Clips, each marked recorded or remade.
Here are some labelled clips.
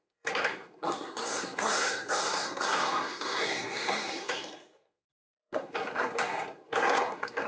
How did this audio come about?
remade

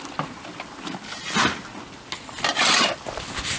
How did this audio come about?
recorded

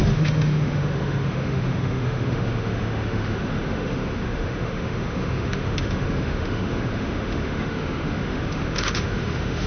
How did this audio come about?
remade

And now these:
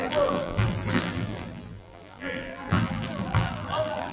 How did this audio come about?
remade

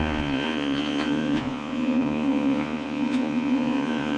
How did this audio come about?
remade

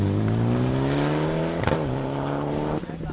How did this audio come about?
recorded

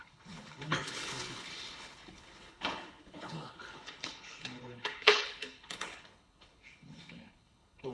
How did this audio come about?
remade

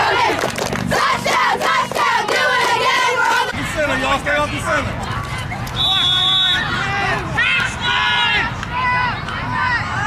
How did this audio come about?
recorded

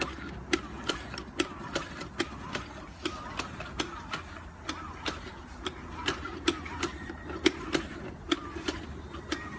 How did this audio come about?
recorded